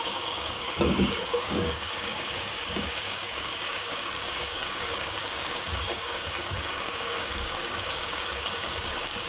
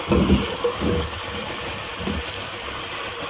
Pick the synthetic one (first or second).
first